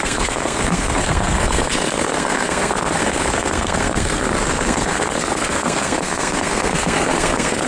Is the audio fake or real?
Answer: fake